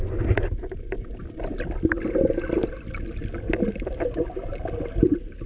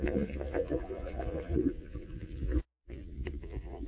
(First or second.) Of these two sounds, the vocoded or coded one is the second